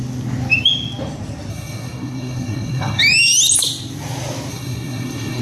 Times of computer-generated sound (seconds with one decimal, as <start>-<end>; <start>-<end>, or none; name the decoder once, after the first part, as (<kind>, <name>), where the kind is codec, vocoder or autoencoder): 1.5-3.0 (codec, SNAC); 4.5-5.4